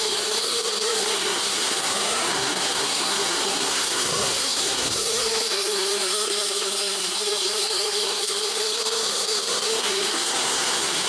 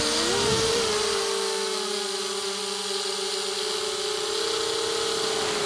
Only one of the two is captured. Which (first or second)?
second